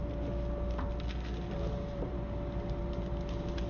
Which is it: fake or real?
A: real